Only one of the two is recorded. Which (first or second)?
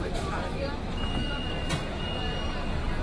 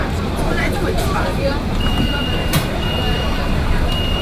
first